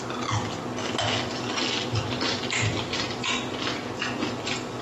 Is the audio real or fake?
real